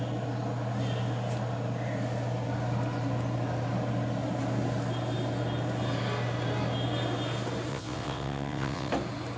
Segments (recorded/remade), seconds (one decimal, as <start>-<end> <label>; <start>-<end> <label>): 0.0-7.7 recorded; 7.7-8.9 remade; 8.9-9.4 recorded